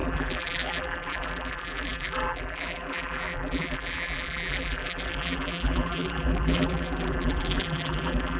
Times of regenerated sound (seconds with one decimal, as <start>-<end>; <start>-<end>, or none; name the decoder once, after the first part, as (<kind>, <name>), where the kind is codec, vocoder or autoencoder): 0.0-8.4 (vocoder, BigVGAN v2)